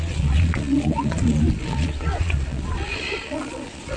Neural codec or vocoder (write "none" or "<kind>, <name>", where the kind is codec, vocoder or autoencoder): vocoder, Vocos